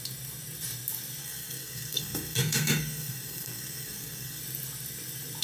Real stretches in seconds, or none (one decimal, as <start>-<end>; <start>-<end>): 0.0-1.2; 4.4-5.4